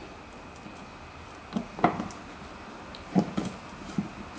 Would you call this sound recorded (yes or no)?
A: yes